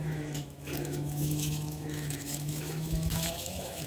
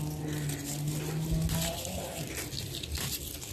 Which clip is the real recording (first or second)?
second